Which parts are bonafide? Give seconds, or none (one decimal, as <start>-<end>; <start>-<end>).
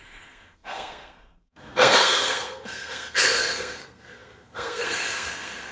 none